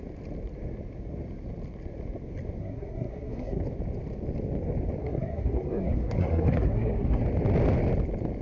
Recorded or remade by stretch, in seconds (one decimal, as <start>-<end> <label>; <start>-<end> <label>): 0.0-2.6 recorded; 2.6-3.6 remade; 3.6-5.0 recorded; 5.0-7.2 remade; 7.2-8.4 recorded